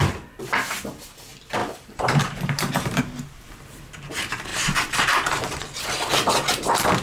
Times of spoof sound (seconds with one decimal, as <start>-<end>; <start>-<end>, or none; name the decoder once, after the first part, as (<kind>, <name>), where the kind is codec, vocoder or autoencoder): 1.6-3.0 (vocoder, BigVGAN v2); 4.5-5.6